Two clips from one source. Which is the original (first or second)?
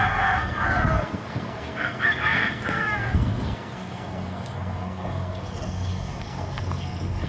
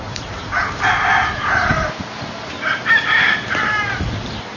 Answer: second